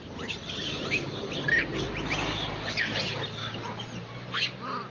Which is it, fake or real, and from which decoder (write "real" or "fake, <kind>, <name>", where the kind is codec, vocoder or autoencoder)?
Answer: real